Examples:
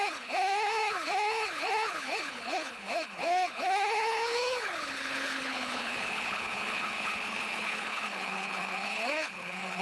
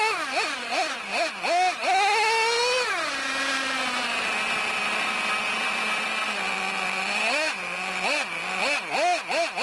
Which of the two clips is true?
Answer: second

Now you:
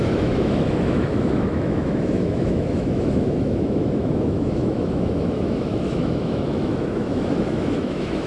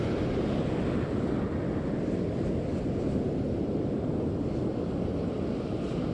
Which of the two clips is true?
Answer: second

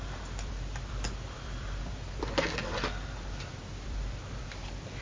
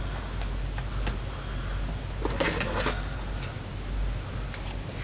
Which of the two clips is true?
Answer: second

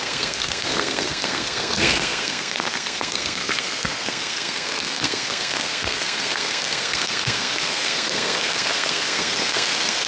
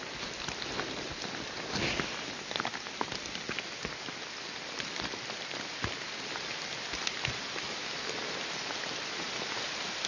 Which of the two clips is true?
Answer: second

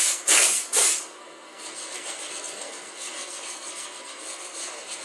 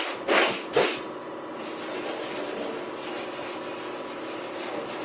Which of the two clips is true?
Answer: second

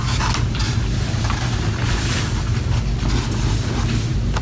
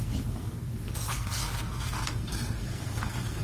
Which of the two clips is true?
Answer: first